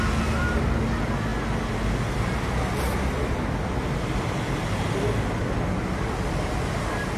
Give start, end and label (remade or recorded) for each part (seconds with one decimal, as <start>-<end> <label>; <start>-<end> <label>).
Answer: 0.0-7.2 recorded